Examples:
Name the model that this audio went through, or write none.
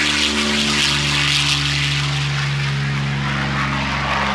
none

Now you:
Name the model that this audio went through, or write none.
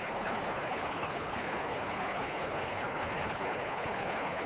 codec, HILCodec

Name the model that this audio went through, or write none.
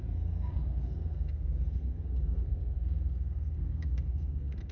codec, SNAC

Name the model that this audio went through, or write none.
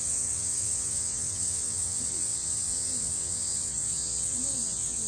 vocoder, WaveNeXt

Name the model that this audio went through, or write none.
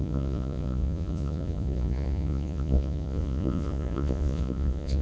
vocoder, Vocos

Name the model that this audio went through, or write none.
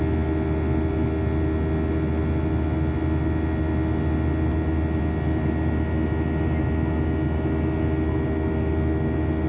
none